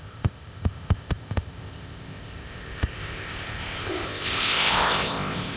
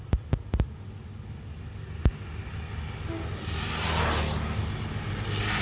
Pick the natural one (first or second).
second